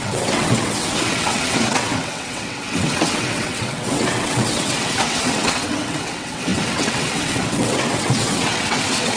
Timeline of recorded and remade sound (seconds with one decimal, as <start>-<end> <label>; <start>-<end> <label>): 0.0-9.2 remade